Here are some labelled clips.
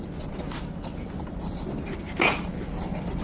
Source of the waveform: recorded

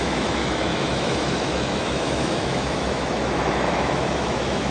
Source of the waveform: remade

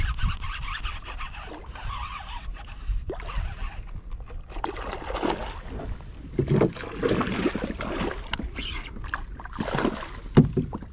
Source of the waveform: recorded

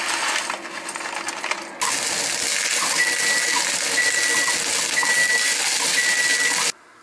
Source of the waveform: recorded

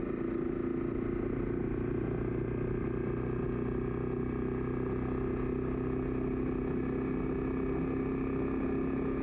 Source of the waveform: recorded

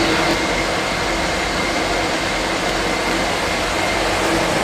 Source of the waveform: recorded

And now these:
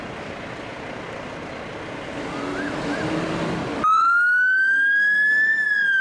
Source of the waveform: recorded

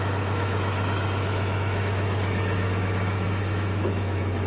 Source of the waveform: remade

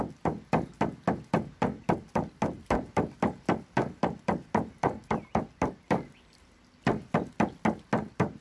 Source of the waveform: recorded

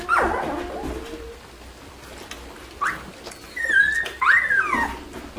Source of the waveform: recorded